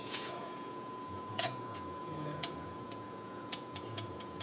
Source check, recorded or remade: remade